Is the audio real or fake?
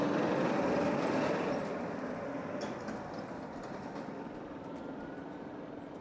real